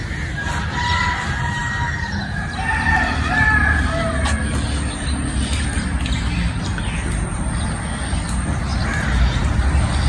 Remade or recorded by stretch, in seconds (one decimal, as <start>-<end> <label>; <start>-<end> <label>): 0.0-8.7 recorded; 8.7-9.4 remade; 9.4-10.1 recorded